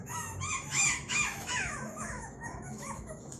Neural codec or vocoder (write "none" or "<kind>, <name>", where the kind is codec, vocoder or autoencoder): autoencoder, DAC-VAE